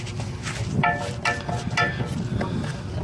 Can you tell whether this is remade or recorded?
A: recorded